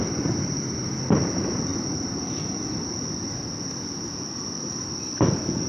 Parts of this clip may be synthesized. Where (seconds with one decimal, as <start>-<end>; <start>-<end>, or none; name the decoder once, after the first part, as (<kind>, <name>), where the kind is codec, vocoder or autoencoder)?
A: none